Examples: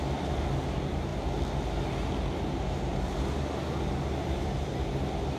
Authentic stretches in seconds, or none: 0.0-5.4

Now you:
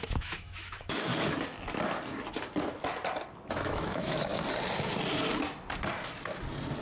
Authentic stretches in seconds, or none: 1.1-3.5; 4.3-6.8

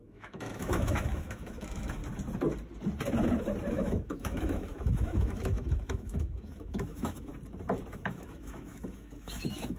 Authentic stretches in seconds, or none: 2.0-3.7; 7.3-7.9

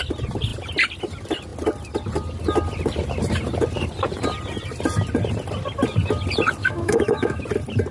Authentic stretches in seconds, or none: 0.0-6.6; 7.4-7.9